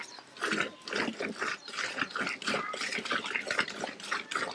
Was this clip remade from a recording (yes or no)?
no